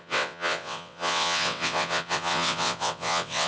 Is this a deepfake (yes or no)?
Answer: yes